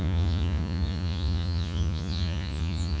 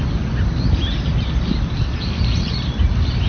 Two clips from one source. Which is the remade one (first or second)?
first